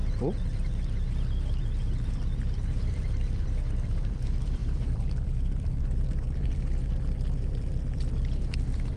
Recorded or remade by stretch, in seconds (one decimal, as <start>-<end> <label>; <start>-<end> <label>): 0.0-2.9 recorded; 2.9-9.0 remade